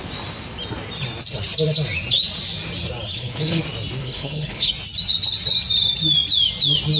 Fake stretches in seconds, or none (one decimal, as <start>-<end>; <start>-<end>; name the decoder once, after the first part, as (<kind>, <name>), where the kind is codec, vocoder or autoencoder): 3.1-3.6 (codec, HILCodec); 4.0-4.7